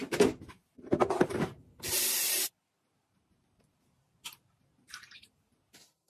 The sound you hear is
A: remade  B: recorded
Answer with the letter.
A